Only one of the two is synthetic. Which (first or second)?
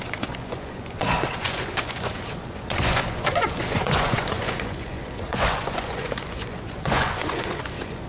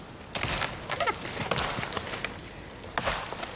first